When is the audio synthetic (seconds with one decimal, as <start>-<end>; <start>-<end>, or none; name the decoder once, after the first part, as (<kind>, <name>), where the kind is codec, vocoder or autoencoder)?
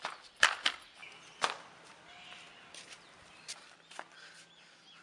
none